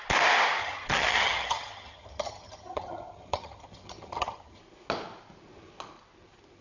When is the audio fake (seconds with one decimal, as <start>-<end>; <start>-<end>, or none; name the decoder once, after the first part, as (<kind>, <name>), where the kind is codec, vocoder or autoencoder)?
0.6-4.6 (vocoder, HiFi-GAN)